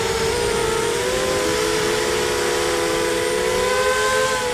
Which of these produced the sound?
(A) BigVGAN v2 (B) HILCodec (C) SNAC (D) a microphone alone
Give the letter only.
D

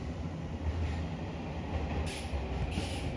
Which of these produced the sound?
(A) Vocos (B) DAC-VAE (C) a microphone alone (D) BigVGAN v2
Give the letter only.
D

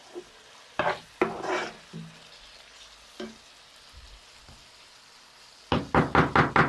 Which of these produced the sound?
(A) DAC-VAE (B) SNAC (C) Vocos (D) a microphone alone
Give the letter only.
D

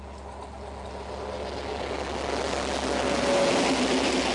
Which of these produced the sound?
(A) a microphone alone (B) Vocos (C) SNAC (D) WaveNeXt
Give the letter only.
A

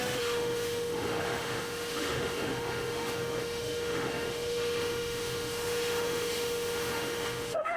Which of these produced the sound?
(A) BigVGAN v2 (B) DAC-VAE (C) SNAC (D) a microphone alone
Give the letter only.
B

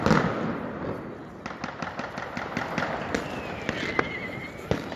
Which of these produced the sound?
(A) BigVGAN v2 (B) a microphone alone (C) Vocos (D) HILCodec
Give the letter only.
B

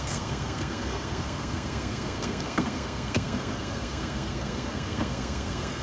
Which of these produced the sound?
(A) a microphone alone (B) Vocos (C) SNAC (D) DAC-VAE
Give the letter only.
C